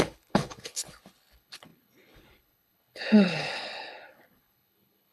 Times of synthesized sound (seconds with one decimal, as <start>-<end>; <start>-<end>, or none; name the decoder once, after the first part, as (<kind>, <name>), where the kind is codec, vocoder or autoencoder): 0.0-5.1 (codec, HILCodec)